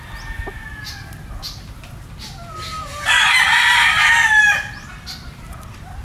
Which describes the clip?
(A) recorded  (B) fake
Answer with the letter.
A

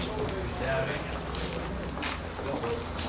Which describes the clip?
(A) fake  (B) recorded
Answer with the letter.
B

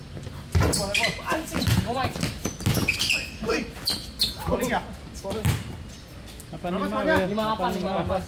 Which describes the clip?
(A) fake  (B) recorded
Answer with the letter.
B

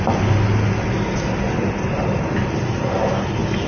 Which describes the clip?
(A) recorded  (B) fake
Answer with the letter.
A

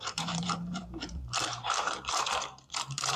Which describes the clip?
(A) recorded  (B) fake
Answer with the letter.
B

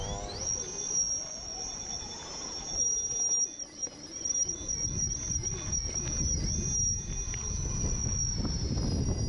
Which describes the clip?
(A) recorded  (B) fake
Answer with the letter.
A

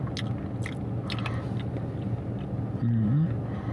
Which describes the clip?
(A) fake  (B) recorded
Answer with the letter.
B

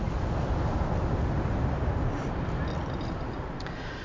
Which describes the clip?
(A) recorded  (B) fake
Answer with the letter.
A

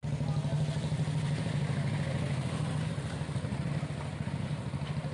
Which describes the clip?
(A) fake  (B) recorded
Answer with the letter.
B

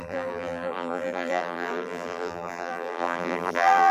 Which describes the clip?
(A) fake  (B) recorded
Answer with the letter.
A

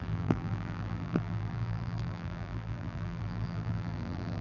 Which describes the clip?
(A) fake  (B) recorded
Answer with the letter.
A